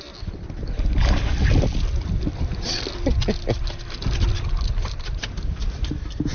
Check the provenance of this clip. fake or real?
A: real